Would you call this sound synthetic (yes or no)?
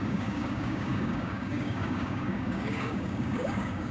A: yes